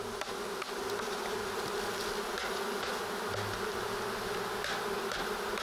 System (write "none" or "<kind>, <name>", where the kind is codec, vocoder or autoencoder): none